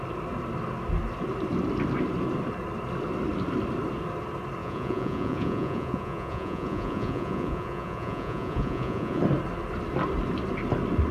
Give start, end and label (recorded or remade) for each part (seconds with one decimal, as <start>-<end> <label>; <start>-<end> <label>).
0.0-4.6 recorded; 4.6-9.2 remade; 9.2-11.1 recorded